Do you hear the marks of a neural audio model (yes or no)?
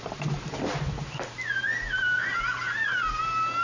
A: no